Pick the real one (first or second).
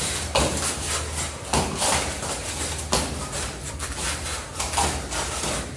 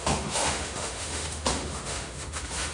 first